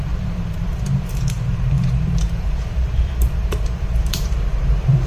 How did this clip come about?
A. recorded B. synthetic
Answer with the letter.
B